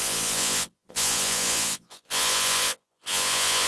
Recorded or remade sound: remade